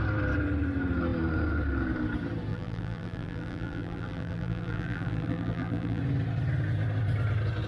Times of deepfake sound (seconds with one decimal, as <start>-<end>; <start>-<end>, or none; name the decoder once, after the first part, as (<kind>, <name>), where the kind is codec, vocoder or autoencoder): 2.5-6.0 (vocoder, BigVGAN v2)